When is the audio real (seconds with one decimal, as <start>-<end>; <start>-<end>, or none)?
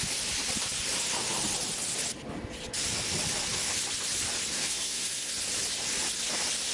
0.0-4.5; 5.3-6.7